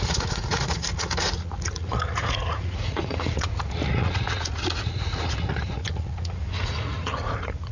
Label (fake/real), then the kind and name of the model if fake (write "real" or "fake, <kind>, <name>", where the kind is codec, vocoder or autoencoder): fake, vocoder, Vocos